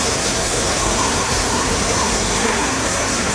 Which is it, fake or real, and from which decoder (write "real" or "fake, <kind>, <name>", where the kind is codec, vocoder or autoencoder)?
fake, codec, SNAC